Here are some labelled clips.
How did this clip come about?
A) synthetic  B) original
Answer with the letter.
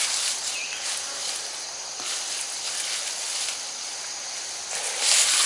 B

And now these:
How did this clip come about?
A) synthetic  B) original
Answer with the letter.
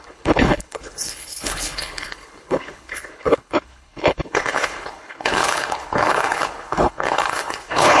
A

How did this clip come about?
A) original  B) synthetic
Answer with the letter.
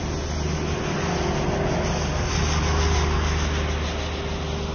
A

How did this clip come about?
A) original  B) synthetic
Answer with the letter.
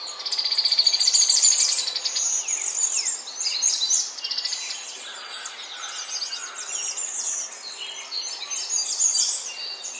A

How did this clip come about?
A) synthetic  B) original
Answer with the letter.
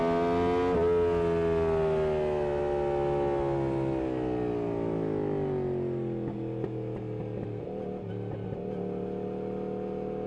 B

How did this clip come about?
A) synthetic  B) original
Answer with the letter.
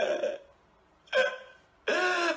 B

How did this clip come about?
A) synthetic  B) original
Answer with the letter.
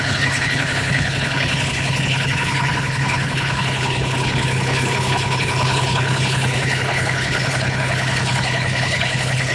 A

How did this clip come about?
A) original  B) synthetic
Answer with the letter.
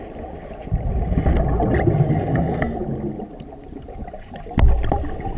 A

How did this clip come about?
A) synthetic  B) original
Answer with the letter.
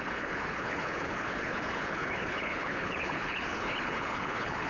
A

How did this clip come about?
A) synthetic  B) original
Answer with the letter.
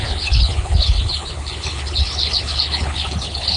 A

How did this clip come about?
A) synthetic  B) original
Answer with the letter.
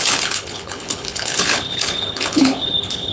A